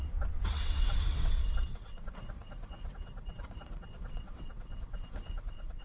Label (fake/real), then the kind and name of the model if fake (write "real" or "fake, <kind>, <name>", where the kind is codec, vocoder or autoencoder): fake, vocoder, WaveNeXt